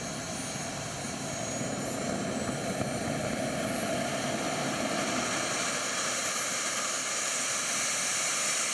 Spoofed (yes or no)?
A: no